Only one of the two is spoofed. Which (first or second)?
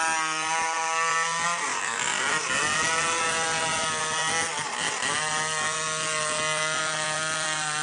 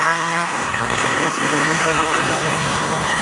second